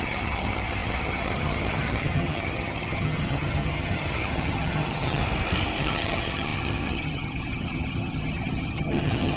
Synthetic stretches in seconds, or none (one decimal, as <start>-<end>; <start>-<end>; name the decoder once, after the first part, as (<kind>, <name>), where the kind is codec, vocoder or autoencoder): 0.0-5.2 (vocoder, HiFi-GAN); 5.8-9.4